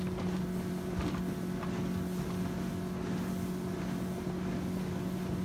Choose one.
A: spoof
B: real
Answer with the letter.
B